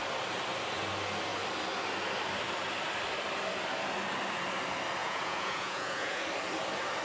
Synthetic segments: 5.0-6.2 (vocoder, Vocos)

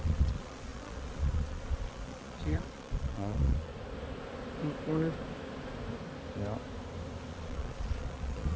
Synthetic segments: 0.0-3.7 (vocoder, Vocos); 7.3-8.6

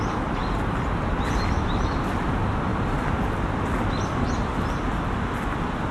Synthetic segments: none

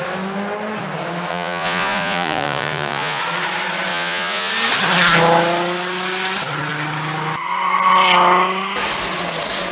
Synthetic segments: 1.3-3.2 (vocoder, Vocos); 3.9-4.5

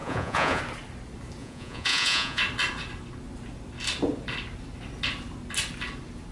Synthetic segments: 0.0-0.6 (vocoder, Vocos); 1.4-2.4